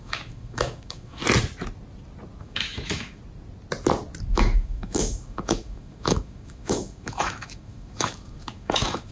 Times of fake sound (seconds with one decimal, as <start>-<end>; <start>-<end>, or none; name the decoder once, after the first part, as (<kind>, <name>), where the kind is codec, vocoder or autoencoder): 0.0-1.2 (autoencoder, DAC-VAE); 2.4-3.2; 4.3-9.1

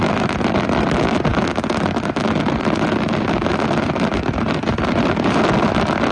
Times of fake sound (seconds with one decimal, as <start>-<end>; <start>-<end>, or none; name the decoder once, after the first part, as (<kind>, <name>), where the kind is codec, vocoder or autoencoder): none